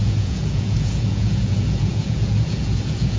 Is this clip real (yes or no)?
no